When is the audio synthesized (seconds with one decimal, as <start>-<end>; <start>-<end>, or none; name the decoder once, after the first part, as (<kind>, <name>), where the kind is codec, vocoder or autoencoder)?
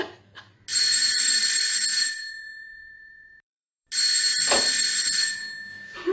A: 0.7-1.4 (vocoder, BigVGAN v2); 1.9-3.9